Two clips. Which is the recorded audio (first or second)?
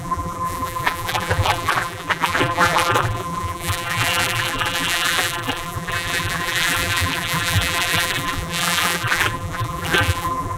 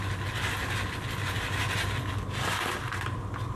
second